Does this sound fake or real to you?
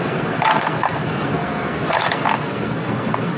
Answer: fake